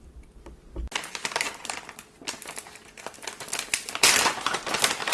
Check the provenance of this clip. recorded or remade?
recorded